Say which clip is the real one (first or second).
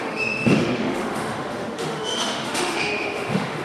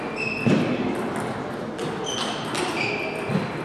second